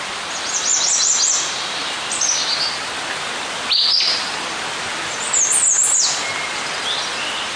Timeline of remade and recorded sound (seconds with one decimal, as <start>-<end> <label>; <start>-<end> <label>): 0.0-7.6 recorded